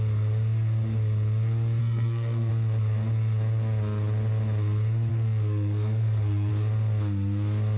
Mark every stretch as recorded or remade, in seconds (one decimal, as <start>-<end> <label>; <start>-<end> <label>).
0.0-1.8 recorded; 1.8-2.5 remade; 2.5-5.1 recorded; 5.1-6.5 remade; 6.5-7.8 recorded